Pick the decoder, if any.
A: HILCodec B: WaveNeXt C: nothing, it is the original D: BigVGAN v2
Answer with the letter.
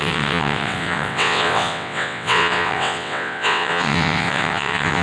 B